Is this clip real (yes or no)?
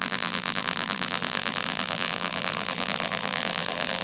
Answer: no